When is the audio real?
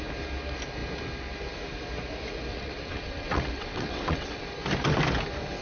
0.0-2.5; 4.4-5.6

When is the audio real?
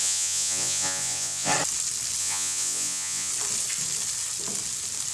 1.5-2.2; 3.3-5.1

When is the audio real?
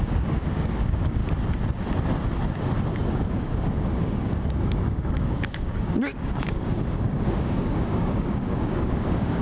1.2-3.1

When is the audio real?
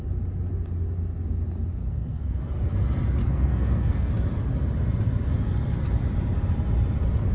0.0-1.8; 2.5-3.2; 4.1-7.3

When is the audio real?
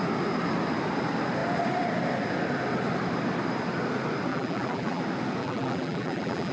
0.0-4.3; 5.0-5.4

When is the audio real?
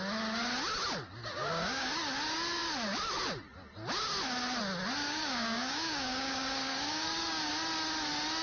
0.0-1.5; 2.0-5.0; 7.5-8.4